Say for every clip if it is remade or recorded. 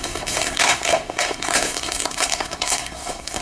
remade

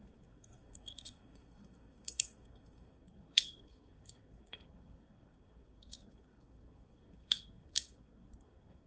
remade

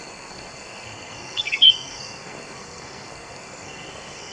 remade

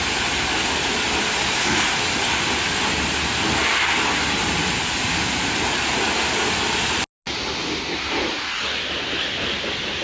recorded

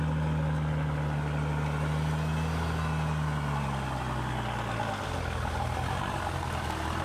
recorded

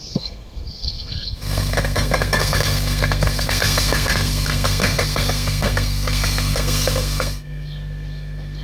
remade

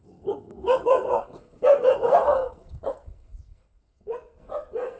remade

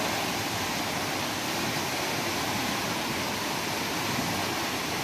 recorded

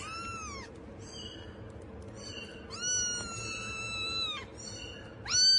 recorded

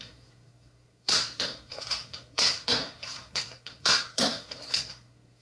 remade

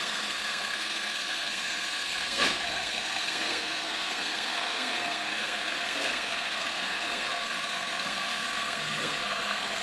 remade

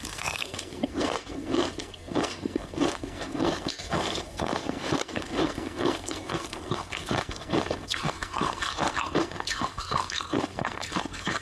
remade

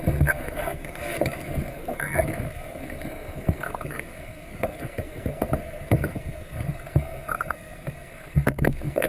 remade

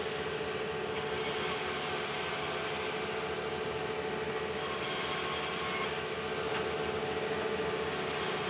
recorded